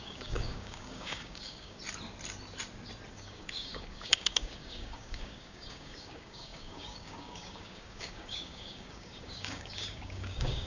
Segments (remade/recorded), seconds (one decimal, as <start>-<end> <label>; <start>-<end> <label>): 0.0-1.8 remade; 1.8-3.1 recorded; 3.1-10.7 remade